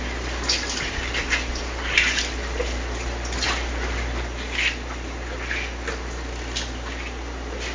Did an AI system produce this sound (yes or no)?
no